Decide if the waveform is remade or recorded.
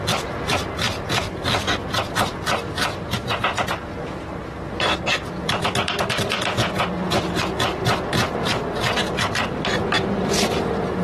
recorded